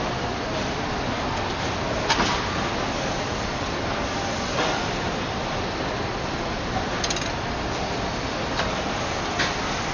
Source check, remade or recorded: recorded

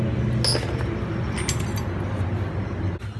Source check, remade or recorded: recorded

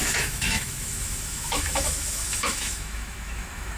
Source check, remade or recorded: remade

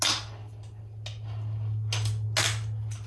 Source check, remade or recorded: recorded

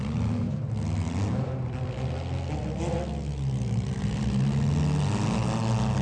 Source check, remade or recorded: recorded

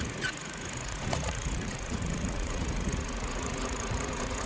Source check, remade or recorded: remade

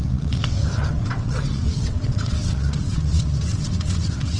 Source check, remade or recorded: remade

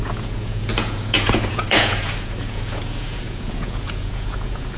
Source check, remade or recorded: remade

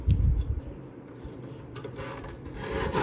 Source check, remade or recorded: recorded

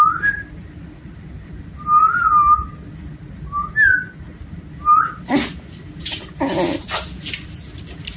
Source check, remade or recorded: recorded